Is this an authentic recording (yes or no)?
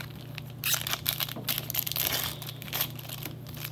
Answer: yes